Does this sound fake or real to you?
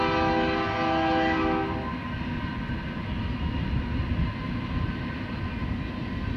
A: real